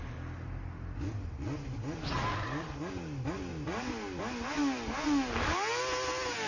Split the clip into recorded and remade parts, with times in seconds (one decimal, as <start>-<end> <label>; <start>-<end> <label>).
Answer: 0.0-3.5 recorded; 3.5-4.2 remade; 4.2-6.5 recorded